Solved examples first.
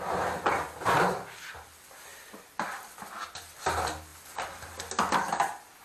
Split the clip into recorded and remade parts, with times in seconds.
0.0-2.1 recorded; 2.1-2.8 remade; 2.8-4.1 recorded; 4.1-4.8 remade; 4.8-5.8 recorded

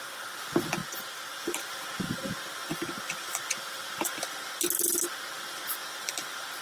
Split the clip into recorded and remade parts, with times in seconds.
0.0-6.6 recorded